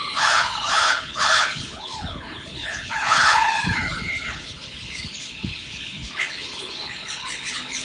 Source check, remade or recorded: remade